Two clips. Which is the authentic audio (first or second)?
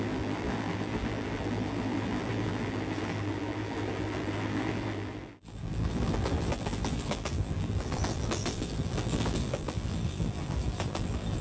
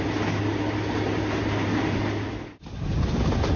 second